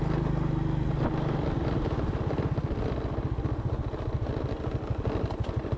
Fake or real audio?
real